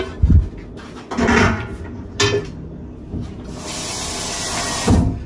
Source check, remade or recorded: recorded